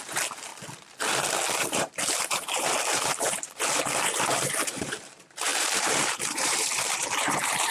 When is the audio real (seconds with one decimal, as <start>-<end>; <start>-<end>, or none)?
0.5-1.5